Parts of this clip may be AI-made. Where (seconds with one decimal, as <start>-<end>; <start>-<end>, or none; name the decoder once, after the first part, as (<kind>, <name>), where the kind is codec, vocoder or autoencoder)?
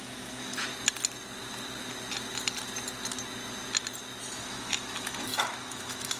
0.0-0.7 (autoencoder, DAC-VAE); 4.4-6.2